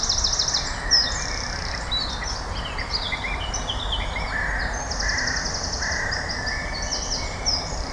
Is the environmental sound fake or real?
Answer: real